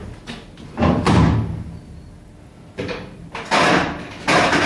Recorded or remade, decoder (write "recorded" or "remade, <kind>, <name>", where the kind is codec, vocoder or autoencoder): recorded